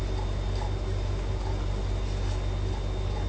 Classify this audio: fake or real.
real